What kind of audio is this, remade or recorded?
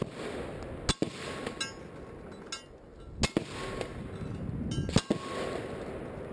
recorded